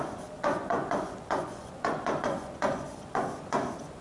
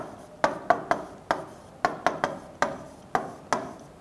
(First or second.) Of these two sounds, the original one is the second